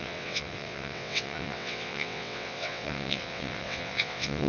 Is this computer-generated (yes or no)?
yes